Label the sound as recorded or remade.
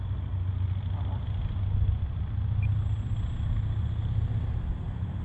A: recorded